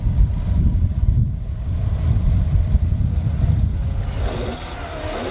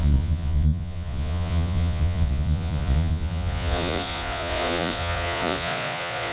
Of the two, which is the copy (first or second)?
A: second